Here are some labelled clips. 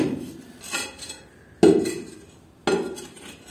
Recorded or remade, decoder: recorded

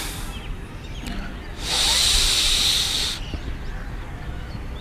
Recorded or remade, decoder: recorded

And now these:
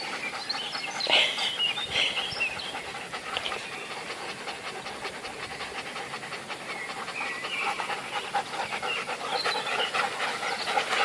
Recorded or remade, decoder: recorded